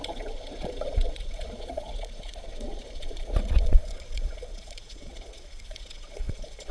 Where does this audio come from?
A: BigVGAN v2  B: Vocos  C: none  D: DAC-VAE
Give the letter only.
B